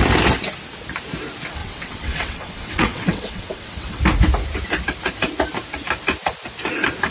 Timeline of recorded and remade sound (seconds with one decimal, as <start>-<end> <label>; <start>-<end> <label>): 0.0-1.6 recorded; 1.6-4.0 remade; 4.0-7.1 recorded

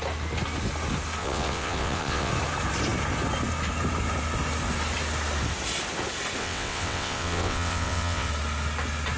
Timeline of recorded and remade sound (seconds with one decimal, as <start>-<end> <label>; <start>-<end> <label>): 0.0-1.2 recorded; 1.2-2.3 remade; 2.3-6.4 recorded; 6.4-8.3 remade; 8.3-9.2 recorded

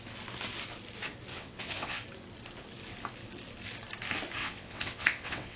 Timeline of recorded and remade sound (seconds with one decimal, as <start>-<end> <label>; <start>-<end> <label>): 0.0-1.3 recorded; 1.3-2.0 remade; 2.0-4.4 recorded; 4.4-5.6 remade

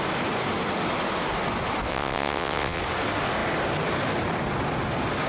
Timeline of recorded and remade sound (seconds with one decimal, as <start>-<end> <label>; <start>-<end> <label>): 0.0-1.9 recorded; 1.9-2.8 remade; 2.8-5.3 recorded

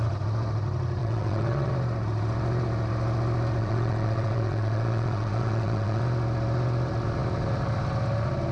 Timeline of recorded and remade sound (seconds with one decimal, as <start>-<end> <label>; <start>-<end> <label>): 0.0-1.0 recorded; 1.0-1.7 remade; 1.7-3.6 recorded; 3.6-6.0 remade; 6.0-8.5 recorded

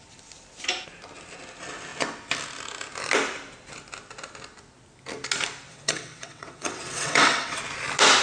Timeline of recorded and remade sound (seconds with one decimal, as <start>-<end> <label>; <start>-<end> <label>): 0.0-5.7 recorded; 5.7-7.6 remade; 7.6-8.2 recorded

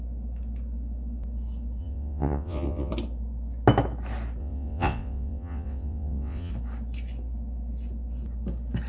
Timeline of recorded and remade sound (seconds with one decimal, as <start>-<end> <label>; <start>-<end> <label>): 0.0-1.8 recorded; 1.8-2.9 remade; 2.9-4.4 recorded; 4.4-6.5 remade; 6.5-8.9 recorded